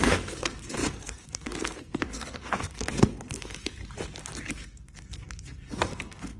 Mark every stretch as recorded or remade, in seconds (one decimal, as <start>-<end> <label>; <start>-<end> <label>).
0.0-3.8 remade; 3.8-4.5 recorded; 4.5-6.4 remade